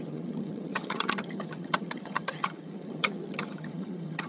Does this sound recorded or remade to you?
remade